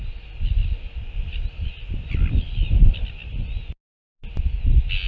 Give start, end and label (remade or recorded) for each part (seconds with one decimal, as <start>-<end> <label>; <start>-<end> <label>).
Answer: 0.0-5.1 recorded